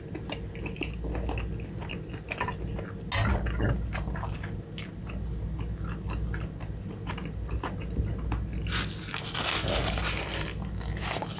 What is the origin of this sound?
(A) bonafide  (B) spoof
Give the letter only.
A